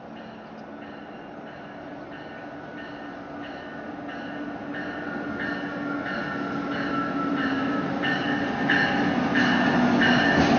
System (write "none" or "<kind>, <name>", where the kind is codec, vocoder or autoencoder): none